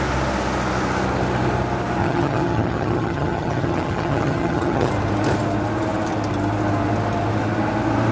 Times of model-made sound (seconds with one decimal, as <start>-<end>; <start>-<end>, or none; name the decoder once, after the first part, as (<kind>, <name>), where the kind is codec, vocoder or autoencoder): 2.0-4.9 (vocoder, HiFi-GAN)